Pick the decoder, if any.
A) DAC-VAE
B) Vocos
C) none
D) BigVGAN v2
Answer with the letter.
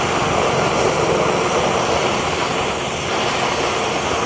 C